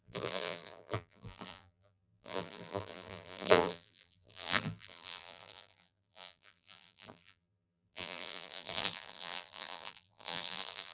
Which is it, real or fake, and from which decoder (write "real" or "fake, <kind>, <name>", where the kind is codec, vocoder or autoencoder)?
fake, vocoder, BigVGAN v2